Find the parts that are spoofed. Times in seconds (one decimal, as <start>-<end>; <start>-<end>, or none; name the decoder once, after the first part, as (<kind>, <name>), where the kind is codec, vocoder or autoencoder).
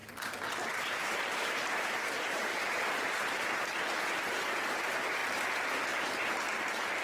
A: 0.7-2.5 (vocoder, BigVGAN v2); 4.1-5.2; 6.0-7.0